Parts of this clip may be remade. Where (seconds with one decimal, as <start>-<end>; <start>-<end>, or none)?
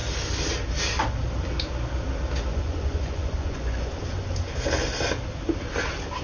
2.5-3.9